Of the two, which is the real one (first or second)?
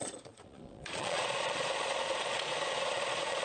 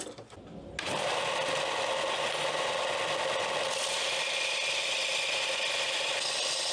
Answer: second